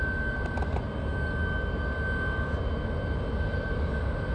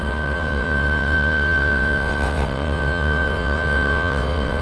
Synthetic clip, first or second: second